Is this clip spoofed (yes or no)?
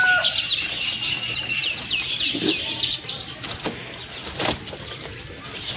no